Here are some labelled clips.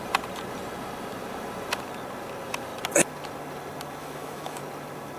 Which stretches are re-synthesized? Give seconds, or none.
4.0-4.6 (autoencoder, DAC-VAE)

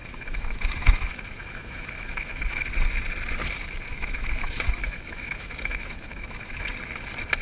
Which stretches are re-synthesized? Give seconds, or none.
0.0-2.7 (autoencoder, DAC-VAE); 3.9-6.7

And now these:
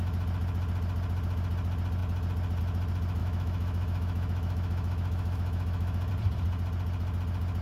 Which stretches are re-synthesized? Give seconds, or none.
3.2-6.1 (autoencoder, DAC-VAE)

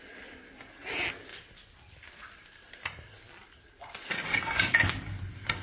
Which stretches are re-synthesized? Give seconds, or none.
none

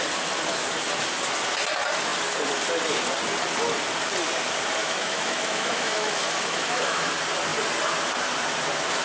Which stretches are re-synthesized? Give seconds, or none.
4.8-7.1 (autoencoder, DAC-VAE)

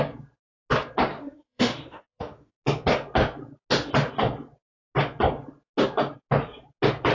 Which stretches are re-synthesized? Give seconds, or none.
1.1-2.5 (autoencoder, DAC-VAE)